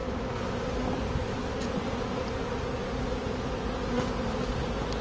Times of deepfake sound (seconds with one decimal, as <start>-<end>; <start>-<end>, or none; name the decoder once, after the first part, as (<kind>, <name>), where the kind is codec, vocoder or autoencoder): none